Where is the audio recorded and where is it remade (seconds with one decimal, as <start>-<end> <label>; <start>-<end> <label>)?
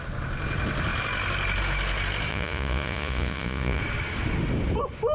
0.0-2.3 recorded; 2.3-3.8 remade; 3.8-5.1 recorded